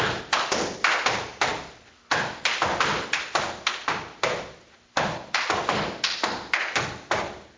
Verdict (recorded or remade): recorded